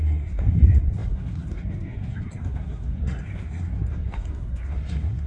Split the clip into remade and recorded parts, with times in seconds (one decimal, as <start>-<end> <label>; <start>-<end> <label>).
0.0-5.3 remade